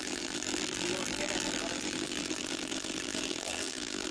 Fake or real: fake